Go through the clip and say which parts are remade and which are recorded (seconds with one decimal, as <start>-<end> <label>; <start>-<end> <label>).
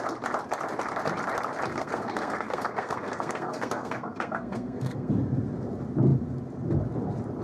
0.0-1.7 recorded; 1.7-5.1 remade; 5.1-7.4 recorded